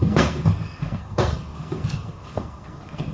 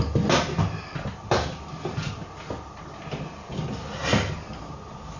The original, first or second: second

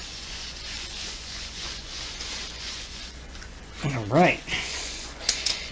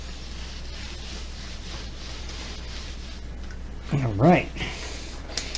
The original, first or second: second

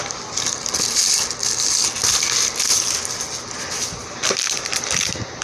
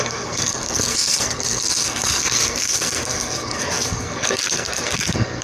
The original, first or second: first